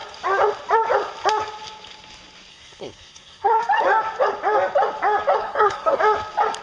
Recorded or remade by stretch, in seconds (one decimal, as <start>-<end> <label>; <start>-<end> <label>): 0.0-2.5 recorded; 2.5-3.6 remade; 3.6-5.4 recorded; 5.4-6.0 remade; 6.0-6.6 recorded